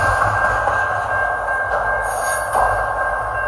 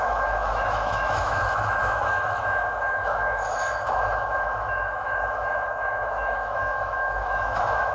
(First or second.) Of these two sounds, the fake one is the second